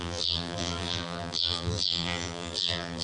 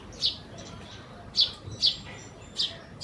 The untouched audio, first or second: second